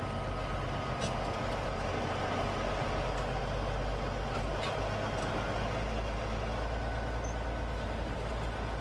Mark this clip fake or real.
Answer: real